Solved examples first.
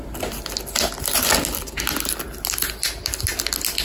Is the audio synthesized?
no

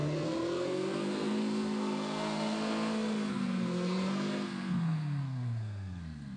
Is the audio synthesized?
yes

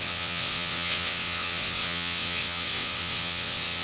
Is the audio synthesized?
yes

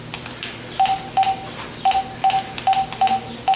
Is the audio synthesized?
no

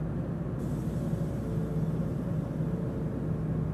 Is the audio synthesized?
no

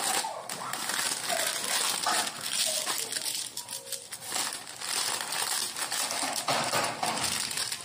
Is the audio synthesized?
no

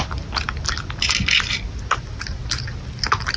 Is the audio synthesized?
no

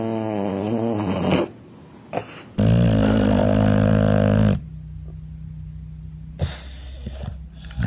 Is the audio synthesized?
no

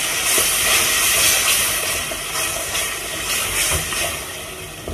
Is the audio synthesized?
no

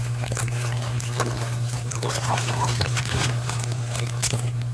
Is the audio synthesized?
yes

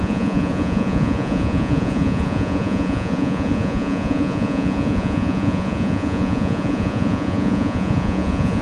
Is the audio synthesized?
yes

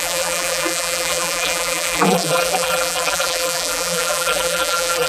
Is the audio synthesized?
yes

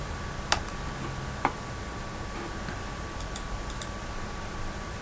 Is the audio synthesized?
no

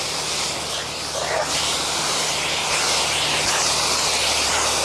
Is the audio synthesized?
no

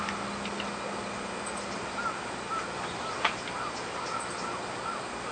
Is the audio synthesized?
no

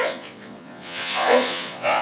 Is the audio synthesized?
yes